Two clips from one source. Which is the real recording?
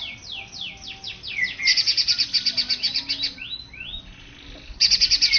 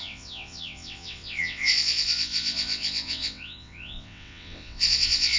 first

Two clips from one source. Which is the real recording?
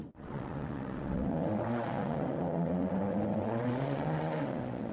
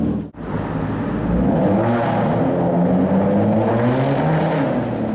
second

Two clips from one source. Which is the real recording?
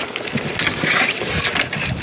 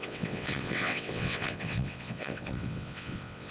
first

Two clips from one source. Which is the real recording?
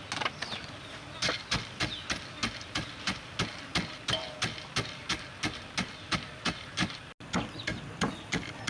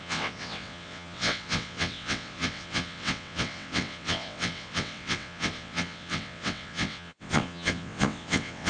first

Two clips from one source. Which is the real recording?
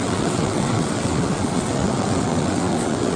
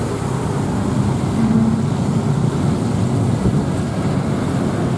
second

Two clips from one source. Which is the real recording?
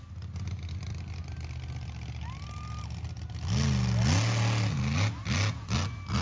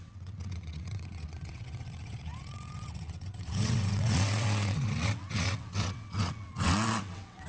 first